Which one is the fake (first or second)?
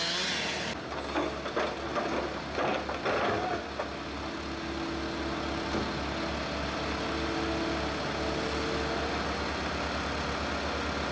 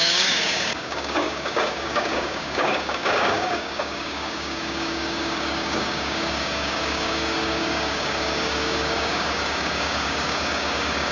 second